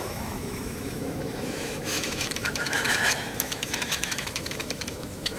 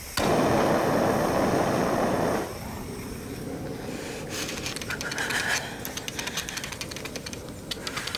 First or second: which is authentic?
second